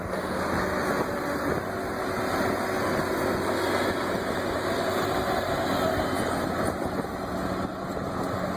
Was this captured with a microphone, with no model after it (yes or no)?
yes